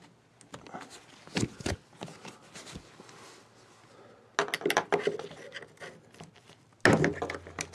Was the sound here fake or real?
real